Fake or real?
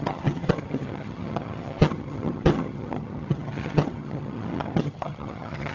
fake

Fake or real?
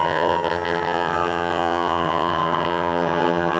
fake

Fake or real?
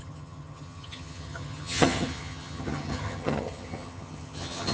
fake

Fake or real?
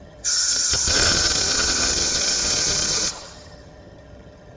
fake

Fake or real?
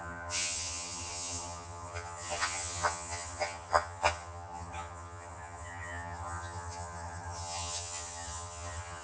fake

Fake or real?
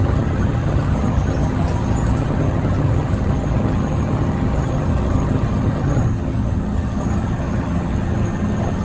fake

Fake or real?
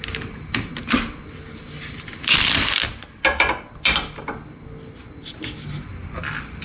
real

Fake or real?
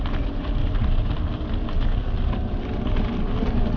real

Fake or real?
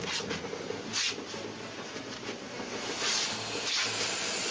real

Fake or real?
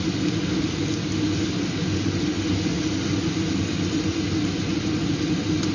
real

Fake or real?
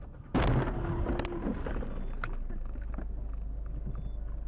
real